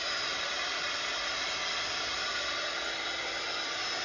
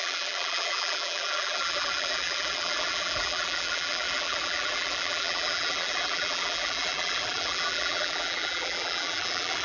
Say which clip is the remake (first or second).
second